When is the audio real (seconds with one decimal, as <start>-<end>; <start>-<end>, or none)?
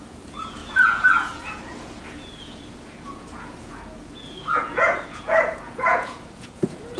none